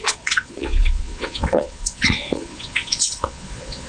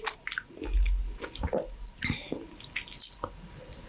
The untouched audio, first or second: second